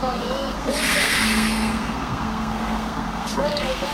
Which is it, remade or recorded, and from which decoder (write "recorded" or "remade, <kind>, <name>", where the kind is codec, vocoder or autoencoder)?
remade, codec, SNAC